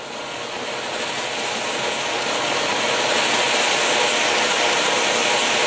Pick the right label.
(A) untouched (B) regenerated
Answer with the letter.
A